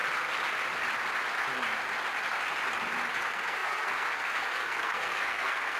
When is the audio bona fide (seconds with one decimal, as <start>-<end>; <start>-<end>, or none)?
0.0-3.1